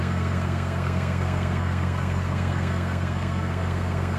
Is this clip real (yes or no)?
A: no